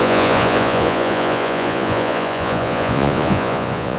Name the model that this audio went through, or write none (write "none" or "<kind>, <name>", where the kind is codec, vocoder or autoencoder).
vocoder, Vocos